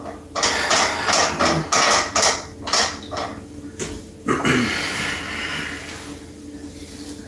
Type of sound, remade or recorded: recorded